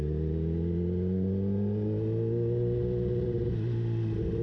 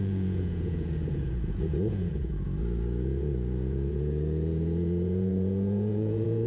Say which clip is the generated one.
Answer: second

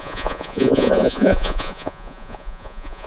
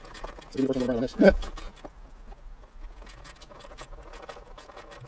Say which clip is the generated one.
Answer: first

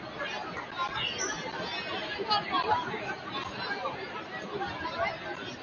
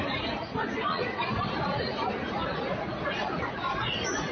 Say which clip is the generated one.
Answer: second